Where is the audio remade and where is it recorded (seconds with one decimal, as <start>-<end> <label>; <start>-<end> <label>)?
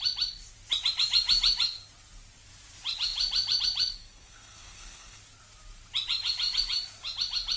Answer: 0.0-4.0 recorded; 4.0-5.2 remade; 5.2-7.6 recorded